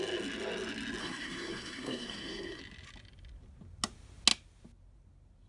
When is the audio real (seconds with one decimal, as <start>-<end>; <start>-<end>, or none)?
0.0-1.0; 2.6-5.5